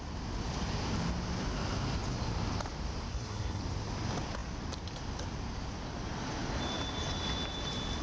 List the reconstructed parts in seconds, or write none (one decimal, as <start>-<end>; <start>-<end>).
3.1-3.6